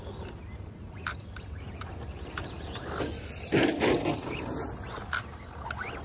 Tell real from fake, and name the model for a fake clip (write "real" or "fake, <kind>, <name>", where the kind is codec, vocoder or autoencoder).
real